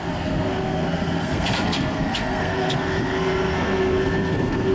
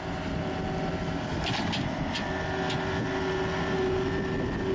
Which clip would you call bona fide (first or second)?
second